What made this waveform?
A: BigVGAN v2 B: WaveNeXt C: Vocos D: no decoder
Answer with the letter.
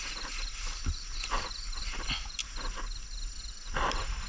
D